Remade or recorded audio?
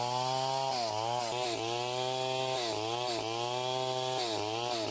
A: recorded